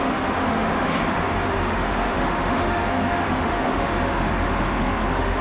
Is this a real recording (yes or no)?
no